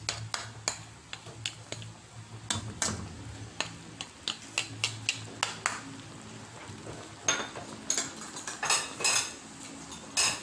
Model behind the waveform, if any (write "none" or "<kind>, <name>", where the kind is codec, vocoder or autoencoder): none